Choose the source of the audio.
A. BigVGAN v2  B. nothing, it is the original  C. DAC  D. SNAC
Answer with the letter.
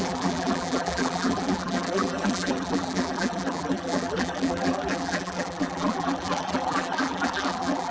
A